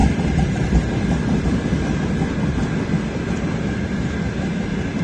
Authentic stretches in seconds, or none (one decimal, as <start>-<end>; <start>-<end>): 2.9-5.0